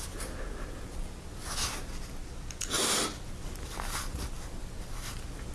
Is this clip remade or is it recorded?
recorded